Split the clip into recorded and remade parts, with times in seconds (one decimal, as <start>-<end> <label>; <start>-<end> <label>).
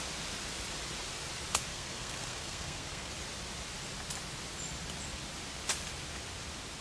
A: 0.0-1.7 recorded; 1.7-3.1 remade; 3.1-6.8 recorded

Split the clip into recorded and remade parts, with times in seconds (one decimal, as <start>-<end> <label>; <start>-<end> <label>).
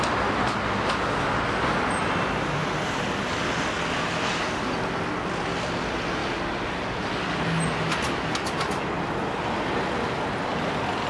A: 0.0-11.1 recorded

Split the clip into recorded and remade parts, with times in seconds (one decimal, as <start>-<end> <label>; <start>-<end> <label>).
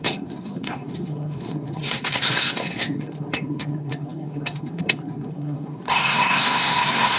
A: 0.0-7.2 remade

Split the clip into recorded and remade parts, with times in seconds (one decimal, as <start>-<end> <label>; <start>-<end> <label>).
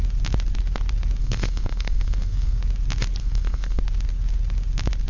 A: 0.0-1.2 recorded; 1.2-2.6 remade; 2.6-3.2 recorded; 3.2-3.8 remade; 3.8-5.1 recorded